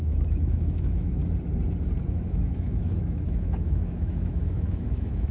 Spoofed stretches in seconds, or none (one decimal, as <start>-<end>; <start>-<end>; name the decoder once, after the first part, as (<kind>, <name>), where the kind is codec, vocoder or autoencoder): 0.0-1.2 (autoencoder, DAC-VAE); 2.1-5.3